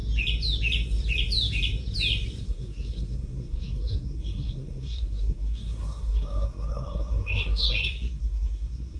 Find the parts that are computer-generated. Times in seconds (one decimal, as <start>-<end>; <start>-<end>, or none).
2.4-9.0